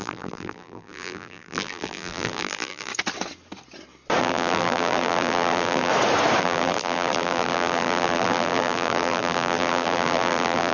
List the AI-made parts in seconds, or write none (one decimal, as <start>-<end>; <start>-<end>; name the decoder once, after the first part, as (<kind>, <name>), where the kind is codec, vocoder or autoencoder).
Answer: 0.0-2.9 (vocoder, BigVGAN v2); 4.2-5.9; 6.4-10.7

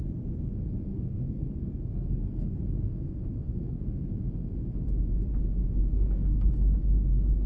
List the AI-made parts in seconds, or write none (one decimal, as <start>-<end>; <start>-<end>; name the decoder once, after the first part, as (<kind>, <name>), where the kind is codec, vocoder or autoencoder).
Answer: 0.9-4.1 (codec, SNAC); 5.9-6.5

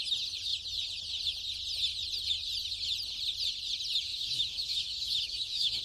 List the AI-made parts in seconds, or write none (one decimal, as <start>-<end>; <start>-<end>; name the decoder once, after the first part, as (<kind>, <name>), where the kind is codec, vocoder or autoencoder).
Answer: 4.1-5.8 (autoencoder, DAC-VAE)

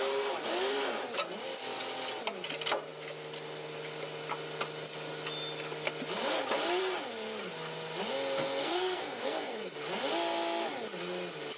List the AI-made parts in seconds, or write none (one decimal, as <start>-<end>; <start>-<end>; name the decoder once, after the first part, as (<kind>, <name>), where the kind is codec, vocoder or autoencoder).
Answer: 8.6-9.7 (codec, SNAC)

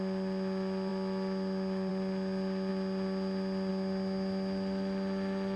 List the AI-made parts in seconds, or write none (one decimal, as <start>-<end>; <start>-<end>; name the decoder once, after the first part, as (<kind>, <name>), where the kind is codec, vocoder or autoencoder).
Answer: none

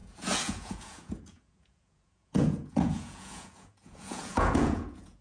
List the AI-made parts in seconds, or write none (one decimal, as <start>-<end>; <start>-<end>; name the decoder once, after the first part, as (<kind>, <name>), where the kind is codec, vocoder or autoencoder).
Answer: 0.0-5.2 (vocoder, Vocos)